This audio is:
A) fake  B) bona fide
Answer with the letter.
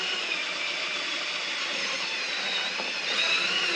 A